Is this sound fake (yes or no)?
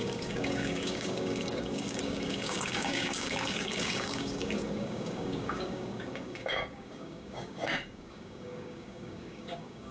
yes